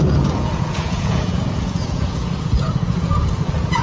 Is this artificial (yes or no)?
yes